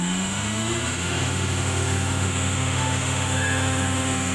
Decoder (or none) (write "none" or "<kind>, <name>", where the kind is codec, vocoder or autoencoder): autoencoder, DAC-VAE